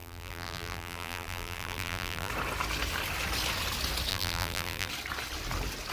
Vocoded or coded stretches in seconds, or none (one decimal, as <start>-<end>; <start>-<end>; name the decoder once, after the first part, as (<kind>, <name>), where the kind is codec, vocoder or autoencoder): 0.0-2.3 (vocoder, BigVGAN v2); 4.1-4.9